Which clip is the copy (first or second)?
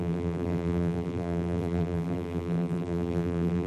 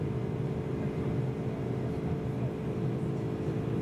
first